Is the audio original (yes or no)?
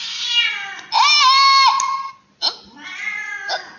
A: yes